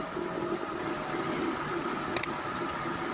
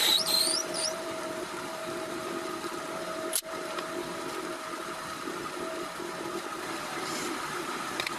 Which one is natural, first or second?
first